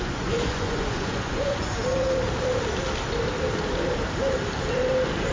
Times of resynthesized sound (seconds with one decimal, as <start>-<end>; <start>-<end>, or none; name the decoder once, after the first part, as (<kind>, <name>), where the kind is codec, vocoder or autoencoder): 0.0-1.8 (vocoder, Vocos)